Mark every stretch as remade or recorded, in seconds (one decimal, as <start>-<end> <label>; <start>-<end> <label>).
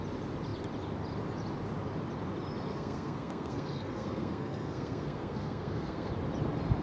0.0-2.7 recorded; 2.7-6.1 remade; 6.1-6.8 recorded